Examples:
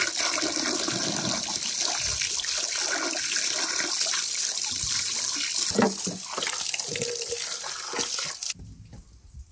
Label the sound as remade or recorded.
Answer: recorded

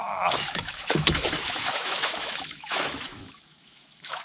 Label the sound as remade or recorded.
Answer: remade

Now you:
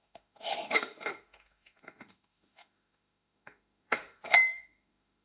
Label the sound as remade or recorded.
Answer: remade